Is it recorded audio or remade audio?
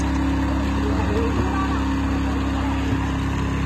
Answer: recorded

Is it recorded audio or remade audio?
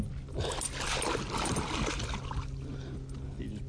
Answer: recorded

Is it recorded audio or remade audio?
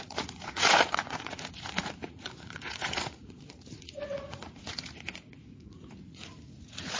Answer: remade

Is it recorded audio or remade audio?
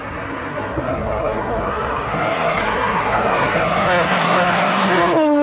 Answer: remade